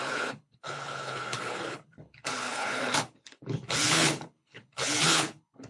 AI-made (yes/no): yes